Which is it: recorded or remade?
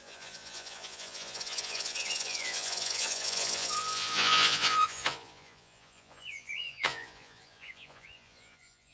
remade